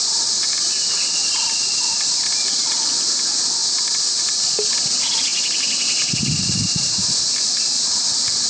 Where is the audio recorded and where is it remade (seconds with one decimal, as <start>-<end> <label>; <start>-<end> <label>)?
0.0-8.5 recorded